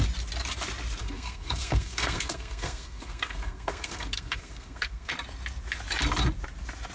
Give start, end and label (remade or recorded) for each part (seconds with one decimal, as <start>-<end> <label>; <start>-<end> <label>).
0.0-1.0 recorded; 1.0-5.1 remade; 5.1-6.9 recorded